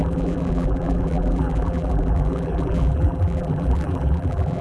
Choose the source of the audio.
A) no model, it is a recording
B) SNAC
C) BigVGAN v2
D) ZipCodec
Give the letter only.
C